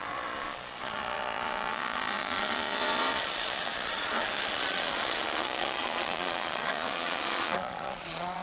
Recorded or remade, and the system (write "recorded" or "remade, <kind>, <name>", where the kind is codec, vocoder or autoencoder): remade, vocoder, Vocos